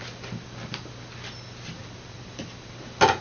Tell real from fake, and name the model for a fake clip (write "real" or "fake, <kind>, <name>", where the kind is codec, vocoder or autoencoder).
real